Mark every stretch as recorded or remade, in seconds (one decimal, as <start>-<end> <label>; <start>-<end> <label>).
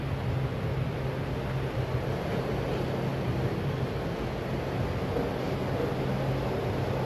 0.0-3.1 recorded; 3.1-3.9 remade; 3.9-7.0 recorded